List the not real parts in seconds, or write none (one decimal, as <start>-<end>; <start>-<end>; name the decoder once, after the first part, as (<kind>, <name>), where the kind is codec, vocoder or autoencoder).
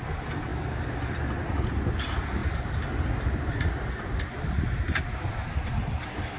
none